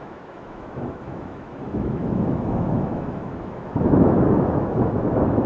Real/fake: fake